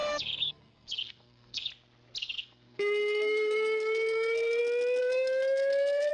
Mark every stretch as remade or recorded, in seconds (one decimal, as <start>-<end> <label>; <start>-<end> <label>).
0.0-1.7 remade; 1.7-2.2 recorded; 2.2-4.6 remade; 4.6-5.0 recorded; 5.0-6.1 remade